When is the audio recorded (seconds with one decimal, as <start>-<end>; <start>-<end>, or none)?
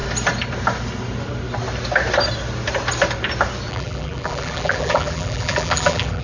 0.0-3.7